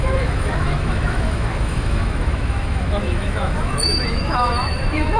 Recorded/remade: remade